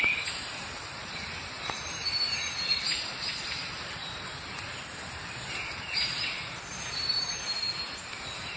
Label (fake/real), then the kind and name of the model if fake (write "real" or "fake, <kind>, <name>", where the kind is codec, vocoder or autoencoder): fake, vocoder, BigVGAN v2